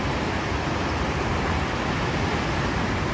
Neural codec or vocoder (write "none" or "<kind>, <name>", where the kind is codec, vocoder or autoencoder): none